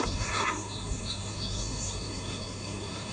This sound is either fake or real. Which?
fake